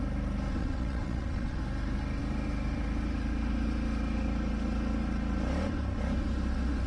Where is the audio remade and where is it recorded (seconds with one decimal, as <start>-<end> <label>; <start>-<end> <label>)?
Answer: 0.0-0.6 recorded; 0.6-1.6 remade; 1.6-6.9 recorded